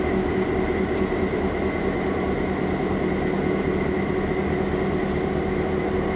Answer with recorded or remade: recorded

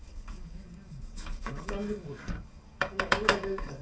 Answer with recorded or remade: remade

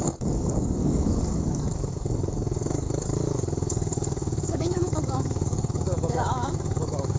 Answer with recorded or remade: remade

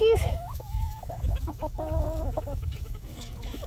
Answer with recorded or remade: remade